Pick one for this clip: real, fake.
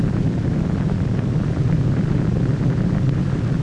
fake